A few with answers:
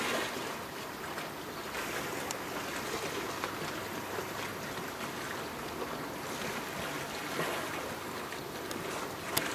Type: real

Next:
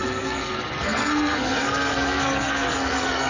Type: fake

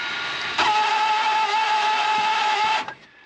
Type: real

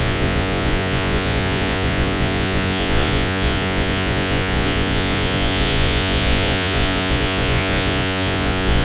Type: fake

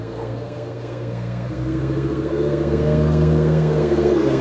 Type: fake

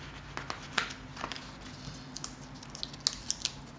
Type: real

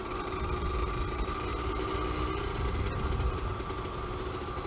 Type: real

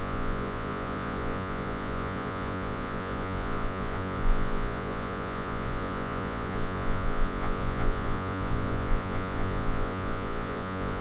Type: fake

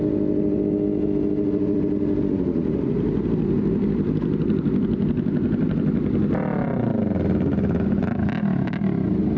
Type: real